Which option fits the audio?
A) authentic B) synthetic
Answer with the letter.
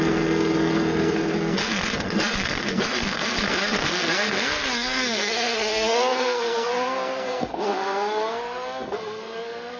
B